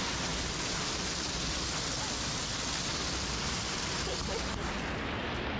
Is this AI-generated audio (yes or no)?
no